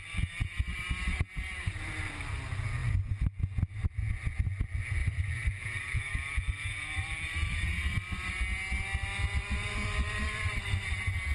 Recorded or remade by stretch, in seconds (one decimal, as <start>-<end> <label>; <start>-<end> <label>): 0.0-5.0 recorded; 5.0-8.3 remade; 8.3-9.4 recorded; 9.4-10.6 remade; 10.6-11.3 recorded